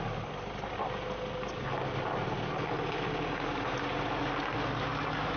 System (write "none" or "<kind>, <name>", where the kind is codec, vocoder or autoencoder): none